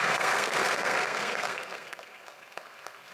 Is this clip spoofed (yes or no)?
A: yes